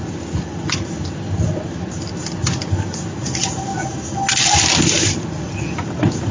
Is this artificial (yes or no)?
no